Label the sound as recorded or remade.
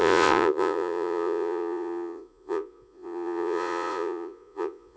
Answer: remade